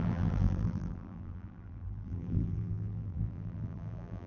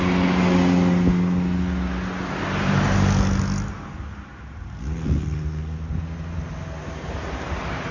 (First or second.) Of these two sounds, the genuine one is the second